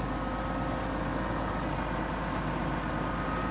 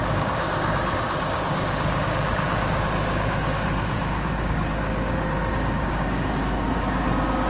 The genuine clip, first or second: first